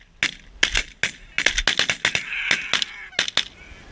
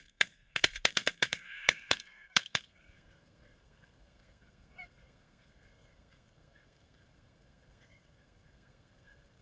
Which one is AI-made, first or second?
second